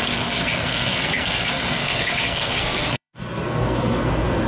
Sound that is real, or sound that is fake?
fake